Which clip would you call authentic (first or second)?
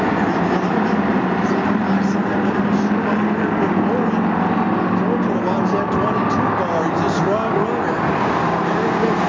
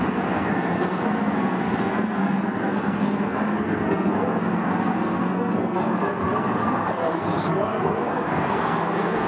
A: first